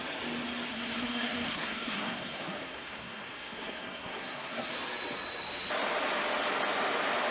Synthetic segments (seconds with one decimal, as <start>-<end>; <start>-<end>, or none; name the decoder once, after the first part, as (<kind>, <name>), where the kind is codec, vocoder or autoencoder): 0.7-4.7 (codec, SNAC)

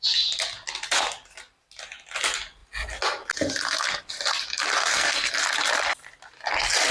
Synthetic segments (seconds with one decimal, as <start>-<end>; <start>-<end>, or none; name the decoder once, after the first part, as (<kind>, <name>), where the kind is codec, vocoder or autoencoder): 4.8-5.3 (codec, SNAC)

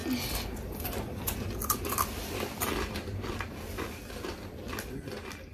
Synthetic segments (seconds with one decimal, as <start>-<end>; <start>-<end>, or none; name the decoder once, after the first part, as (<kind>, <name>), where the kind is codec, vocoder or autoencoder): none

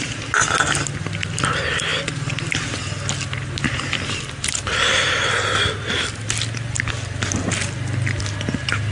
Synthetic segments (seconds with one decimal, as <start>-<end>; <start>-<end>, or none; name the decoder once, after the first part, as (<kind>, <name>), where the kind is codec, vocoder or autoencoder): none

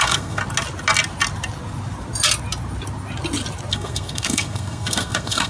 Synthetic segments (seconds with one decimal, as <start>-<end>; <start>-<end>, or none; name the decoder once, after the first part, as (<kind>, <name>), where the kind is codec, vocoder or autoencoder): 0.0-0.4 (codec, SNAC); 3.7-5.5

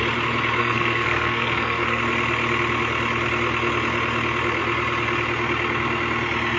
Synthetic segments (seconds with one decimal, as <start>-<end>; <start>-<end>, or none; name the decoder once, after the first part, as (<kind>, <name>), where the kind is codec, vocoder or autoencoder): 0.6-2.0 (codec, SNAC)